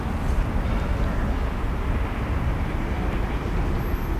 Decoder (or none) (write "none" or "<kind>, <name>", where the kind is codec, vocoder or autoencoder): none